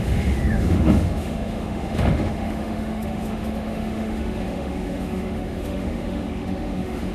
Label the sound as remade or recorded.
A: remade